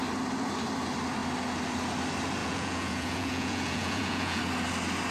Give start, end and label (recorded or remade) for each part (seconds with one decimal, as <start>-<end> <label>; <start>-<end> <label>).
0.0-2.4 recorded; 2.4-4.4 remade; 4.4-5.1 recorded